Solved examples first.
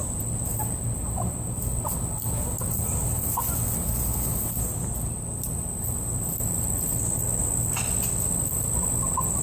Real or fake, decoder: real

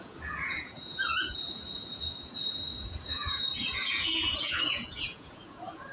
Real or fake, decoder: fake, vocoder, Vocos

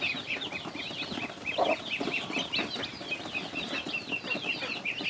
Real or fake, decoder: real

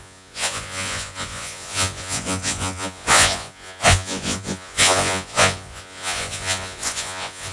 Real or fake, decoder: fake, vocoder, Vocos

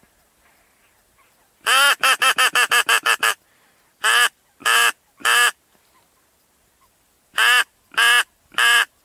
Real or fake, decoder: real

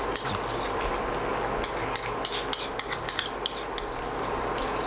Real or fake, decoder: real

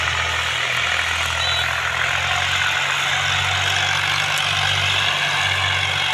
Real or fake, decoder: real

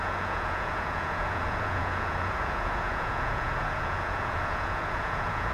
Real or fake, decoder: fake, vocoder, Vocos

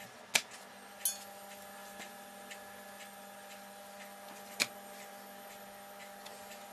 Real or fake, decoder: real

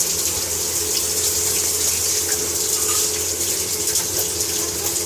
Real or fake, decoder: real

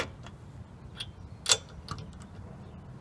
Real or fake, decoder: real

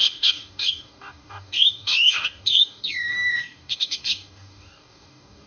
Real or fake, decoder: fake, codec, DAC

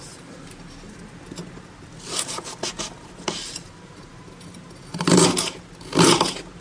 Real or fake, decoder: real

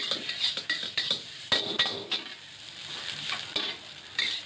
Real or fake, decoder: real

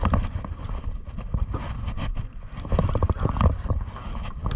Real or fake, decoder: real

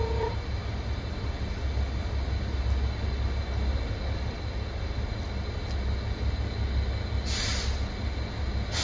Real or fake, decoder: real